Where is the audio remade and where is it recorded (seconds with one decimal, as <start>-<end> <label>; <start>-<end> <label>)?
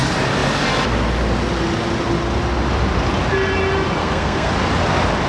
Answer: 0.0-4.0 recorded; 4.0-4.5 remade; 4.5-5.3 recorded